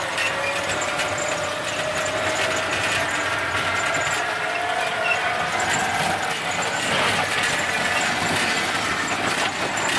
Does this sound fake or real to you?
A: real